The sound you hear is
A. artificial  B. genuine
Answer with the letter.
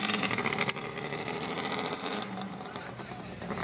A